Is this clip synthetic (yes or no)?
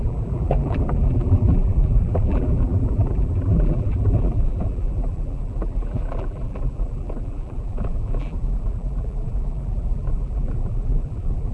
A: yes